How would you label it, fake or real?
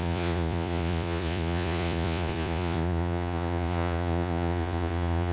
fake